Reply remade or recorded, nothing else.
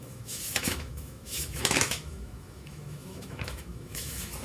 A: remade